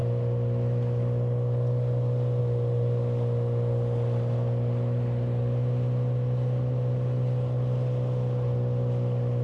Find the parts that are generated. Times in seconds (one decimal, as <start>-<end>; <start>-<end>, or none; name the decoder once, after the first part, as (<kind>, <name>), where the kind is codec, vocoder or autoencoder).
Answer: none